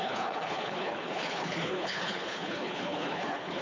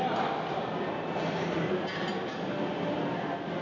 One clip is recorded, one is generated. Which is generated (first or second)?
first